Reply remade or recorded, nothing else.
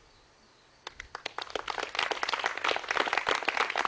recorded